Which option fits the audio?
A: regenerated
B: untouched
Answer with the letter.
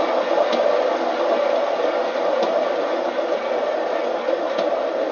B